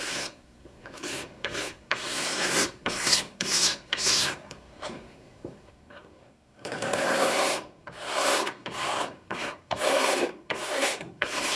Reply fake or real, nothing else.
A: fake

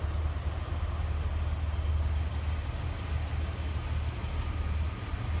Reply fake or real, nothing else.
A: real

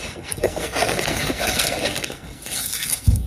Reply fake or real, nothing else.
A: fake